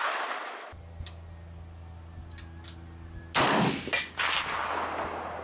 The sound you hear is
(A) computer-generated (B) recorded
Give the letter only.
B